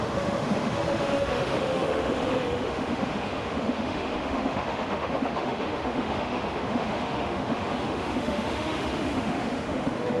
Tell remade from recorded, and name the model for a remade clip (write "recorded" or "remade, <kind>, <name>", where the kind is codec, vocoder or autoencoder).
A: remade, autoencoder, DAC-VAE